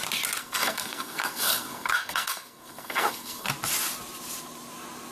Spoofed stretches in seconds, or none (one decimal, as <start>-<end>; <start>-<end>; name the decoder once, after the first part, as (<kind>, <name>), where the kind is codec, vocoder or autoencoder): 0.4-3.5 (codec, SNAC)